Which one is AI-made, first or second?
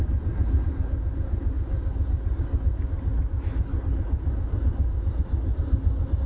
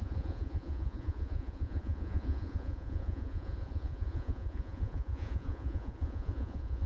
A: second